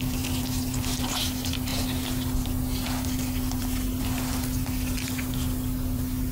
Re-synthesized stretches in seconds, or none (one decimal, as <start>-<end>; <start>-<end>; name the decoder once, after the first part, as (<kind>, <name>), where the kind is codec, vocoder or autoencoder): none